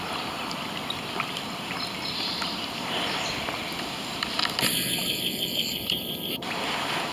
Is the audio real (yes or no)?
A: yes